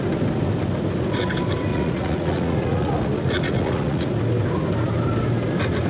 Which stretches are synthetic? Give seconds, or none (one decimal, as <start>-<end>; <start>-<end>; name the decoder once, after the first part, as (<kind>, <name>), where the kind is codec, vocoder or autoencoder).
1.7-4.1 (vocoder, Vocos)